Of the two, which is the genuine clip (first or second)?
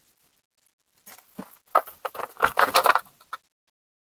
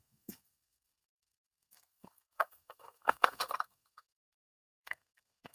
first